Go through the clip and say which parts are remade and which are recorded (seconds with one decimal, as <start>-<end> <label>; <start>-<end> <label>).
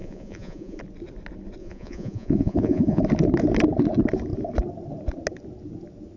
0.0-0.8 remade; 0.8-1.6 recorded; 1.6-3.0 remade; 3.0-6.2 recorded